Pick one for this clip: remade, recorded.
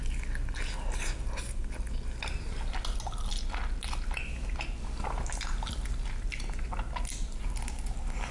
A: recorded